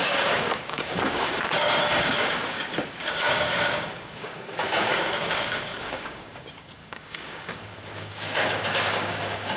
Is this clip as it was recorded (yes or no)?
no